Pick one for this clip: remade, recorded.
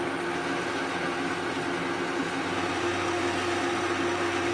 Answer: recorded